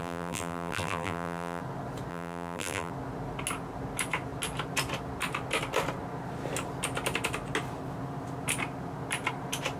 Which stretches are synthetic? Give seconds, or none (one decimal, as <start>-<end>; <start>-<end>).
0.0-1.6; 2.1-2.9